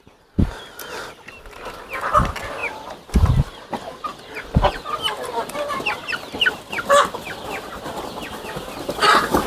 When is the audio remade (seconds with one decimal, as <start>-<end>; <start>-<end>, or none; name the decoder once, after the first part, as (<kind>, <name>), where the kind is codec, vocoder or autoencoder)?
none